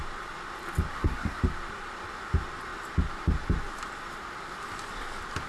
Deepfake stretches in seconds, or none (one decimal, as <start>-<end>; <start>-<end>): 0.9-1.4